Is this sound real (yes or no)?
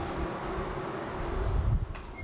yes